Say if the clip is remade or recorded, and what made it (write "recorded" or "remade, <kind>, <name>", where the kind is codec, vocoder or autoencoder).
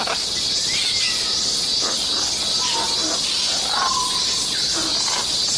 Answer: recorded